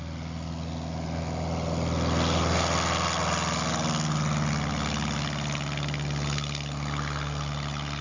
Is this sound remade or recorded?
recorded